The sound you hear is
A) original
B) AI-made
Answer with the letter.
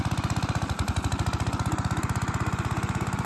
A